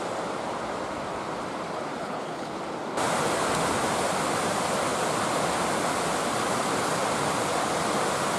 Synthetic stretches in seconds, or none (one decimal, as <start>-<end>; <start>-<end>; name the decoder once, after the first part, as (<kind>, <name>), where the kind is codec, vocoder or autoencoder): 2.0-2.6 (codec, HILCodec)